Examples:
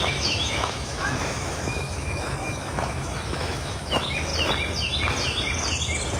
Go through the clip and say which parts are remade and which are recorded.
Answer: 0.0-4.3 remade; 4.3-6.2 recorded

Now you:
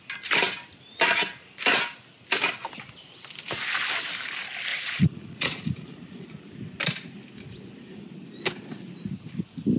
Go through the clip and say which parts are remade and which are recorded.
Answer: 0.0-4.7 recorded; 4.7-6.3 remade; 6.3-9.8 recorded

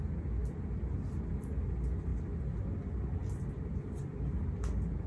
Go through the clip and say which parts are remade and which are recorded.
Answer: 0.0-5.1 recorded

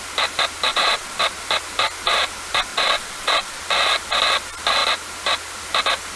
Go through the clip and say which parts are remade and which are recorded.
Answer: 0.0-0.7 recorded; 0.7-1.2 remade; 1.2-2.7 recorded; 2.7-3.6 remade; 3.6-6.2 recorded

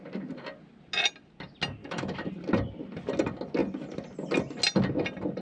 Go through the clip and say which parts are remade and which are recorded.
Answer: 0.0-1.8 recorded; 1.8-2.3 remade; 2.3-5.4 recorded

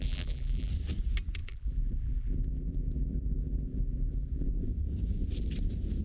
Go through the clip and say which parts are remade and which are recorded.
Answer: 0.0-0.7 remade; 0.7-1.4 recorded; 1.4-4.6 remade; 4.6-6.0 recorded

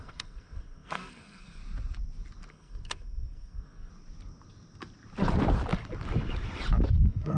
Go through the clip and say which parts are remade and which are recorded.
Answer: 0.0-1.6 remade; 1.6-2.5 recorded; 2.5-3.9 remade; 3.9-6.9 recorded; 6.9-7.4 remade

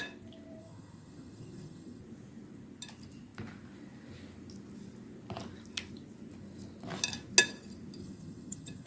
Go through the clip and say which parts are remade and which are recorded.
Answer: 0.0-0.6 recorded; 0.6-2.0 remade; 2.0-8.0 recorded; 8.0-8.9 remade